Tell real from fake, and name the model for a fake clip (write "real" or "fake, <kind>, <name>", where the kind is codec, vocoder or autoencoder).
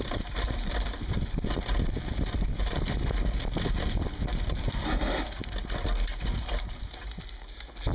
real